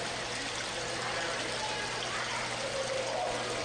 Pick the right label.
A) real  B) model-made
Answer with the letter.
A